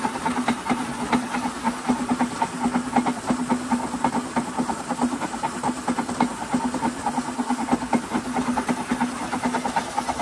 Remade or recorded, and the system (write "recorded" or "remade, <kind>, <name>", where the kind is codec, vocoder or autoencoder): recorded